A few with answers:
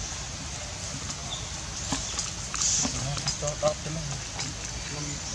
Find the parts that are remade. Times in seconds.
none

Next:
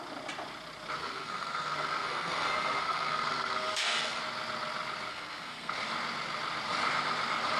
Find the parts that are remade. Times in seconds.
1.0-4.2; 5.1-5.7